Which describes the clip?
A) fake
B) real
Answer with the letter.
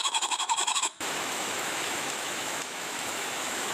A